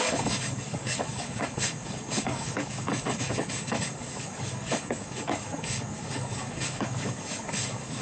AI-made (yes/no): yes